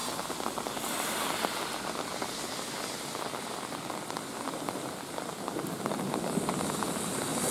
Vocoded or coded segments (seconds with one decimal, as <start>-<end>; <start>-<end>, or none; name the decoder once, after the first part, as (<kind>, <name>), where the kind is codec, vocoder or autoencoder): none